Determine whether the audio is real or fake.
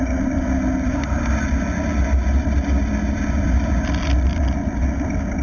real